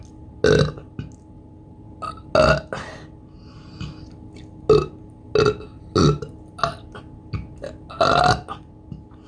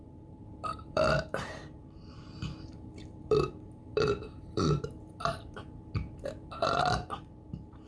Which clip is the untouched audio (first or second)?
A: first